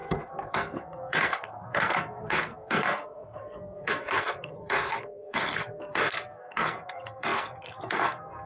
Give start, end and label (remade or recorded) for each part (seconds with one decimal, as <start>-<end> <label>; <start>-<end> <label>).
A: 0.0-8.5 remade